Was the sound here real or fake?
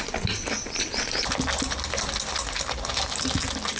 real